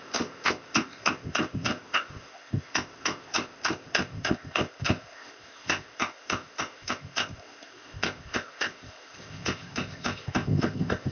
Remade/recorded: remade